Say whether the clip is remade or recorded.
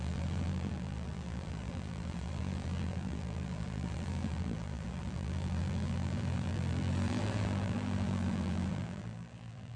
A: remade